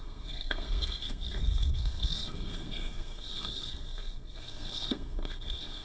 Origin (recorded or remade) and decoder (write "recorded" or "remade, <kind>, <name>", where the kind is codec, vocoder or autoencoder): remade, codec, SNAC